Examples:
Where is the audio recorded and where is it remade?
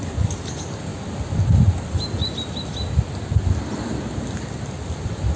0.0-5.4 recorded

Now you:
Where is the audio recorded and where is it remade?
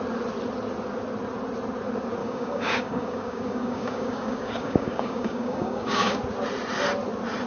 0.0-2.2 recorded; 2.2-6.2 remade; 6.2-7.5 recorded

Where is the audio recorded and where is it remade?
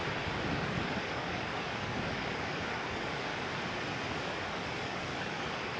0.0-0.5 recorded; 0.5-3.3 remade; 3.3-4.1 recorded; 4.1-5.8 remade